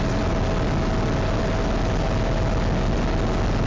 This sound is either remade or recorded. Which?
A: recorded